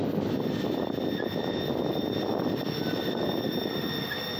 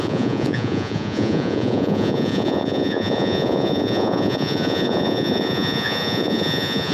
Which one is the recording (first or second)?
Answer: first